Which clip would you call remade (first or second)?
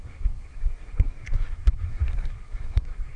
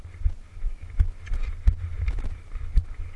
first